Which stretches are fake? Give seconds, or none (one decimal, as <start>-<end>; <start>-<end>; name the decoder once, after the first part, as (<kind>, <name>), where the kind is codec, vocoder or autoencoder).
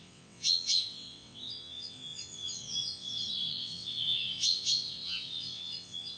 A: 0.0-6.2 (vocoder, WaveNeXt)